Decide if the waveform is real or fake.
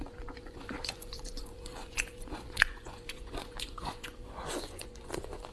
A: fake